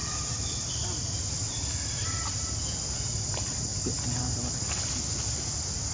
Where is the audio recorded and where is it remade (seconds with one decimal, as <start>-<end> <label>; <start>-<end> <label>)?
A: 0.0-5.9 recorded